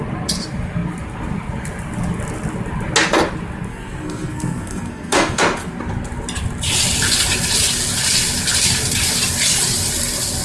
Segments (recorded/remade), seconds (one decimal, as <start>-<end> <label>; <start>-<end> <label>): 0.0-3.7 recorded; 3.7-5.4 remade; 5.4-10.4 recorded